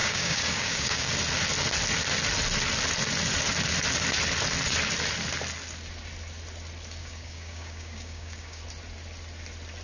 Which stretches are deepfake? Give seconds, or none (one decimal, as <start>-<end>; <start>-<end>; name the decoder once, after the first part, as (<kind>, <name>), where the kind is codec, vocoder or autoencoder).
0.0-1.1 (codec, DAC); 7.0-8.6